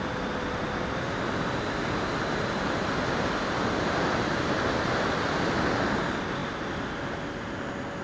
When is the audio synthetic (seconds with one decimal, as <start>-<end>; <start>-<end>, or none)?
none

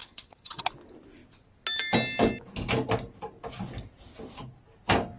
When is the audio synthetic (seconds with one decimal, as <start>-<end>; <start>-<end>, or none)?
0.0-0.6

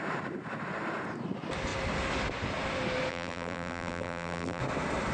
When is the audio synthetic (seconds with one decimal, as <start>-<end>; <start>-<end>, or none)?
3.1-4.6

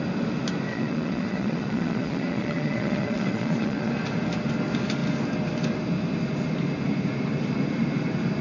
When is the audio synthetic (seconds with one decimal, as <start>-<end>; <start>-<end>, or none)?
0.7-3.9